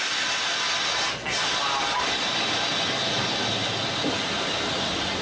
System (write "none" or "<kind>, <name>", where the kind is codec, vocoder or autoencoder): none